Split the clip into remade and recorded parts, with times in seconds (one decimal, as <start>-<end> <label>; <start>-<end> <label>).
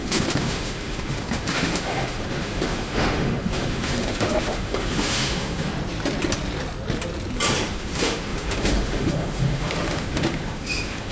0.0-5.7 remade; 5.7-7.7 recorded; 7.7-11.1 remade